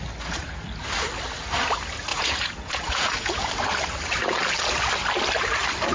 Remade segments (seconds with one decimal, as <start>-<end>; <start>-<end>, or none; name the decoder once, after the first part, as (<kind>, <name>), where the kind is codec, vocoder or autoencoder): 2.1-3.5 (vocoder, Vocos)